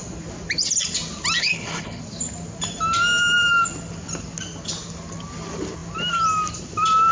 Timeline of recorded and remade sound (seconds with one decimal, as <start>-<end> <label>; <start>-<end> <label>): 0.0-1.4 recorded; 1.4-2.0 remade; 2.0-7.1 recorded